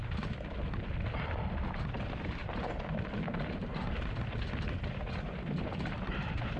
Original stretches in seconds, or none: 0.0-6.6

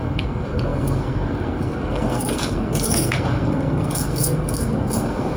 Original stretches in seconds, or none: none

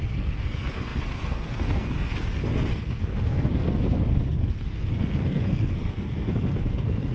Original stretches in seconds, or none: none

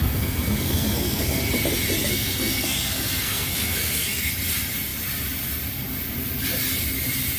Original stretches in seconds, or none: 1.4-2.0; 4.3-7.4